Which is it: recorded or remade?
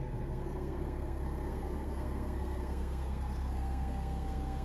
remade